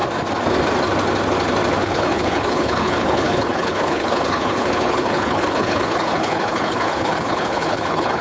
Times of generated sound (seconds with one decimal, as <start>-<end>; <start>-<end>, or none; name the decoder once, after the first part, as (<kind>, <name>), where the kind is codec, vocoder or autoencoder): 1.8-8.2 (codec, HILCodec)